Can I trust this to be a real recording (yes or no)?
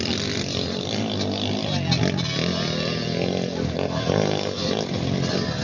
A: yes